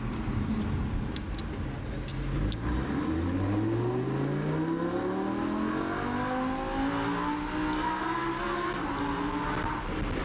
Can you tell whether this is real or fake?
real